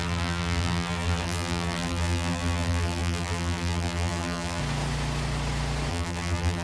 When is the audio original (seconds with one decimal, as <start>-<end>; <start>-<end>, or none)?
4.6-5.9